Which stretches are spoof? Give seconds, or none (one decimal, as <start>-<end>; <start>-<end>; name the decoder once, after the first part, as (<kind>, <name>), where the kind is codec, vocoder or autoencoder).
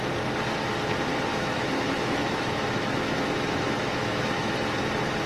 1.3-4.5 (autoencoder, DAC-VAE)